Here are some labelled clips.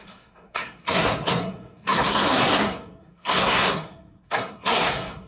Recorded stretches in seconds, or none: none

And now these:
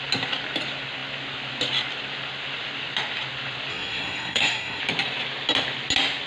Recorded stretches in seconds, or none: 0.0-3.7; 4.8-6.3

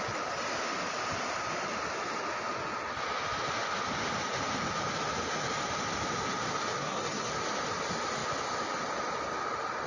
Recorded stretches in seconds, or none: 0.0-6.8; 7.3-9.9

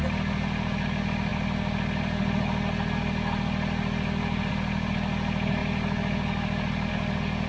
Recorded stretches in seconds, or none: 0.0-7.5

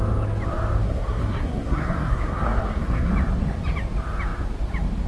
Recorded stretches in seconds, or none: 0.0-0.8; 3.1-5.1